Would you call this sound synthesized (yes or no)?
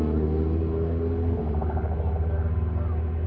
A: no